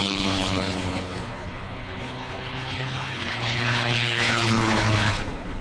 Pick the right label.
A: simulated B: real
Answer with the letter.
A